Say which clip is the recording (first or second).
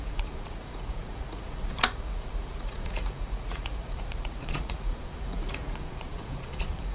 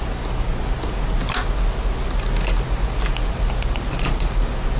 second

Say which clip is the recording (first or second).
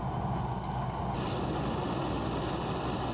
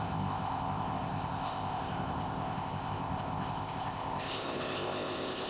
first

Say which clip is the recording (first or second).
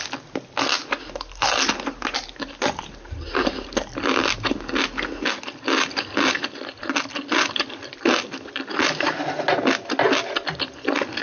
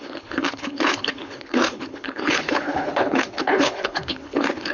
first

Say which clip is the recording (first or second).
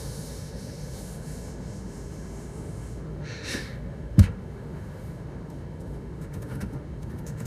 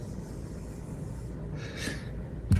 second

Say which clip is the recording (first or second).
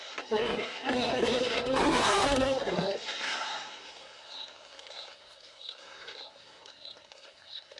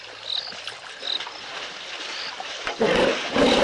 second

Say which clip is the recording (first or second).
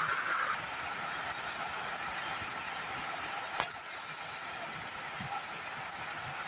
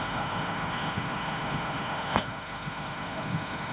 first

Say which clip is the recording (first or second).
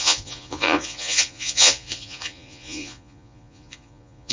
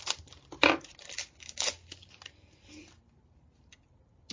second